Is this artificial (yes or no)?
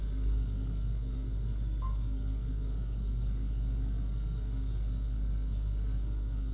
yes